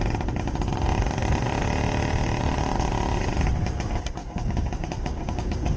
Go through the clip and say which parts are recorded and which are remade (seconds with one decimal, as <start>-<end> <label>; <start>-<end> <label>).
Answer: 0.0-4.2 recorded; 4.2-5.8 remade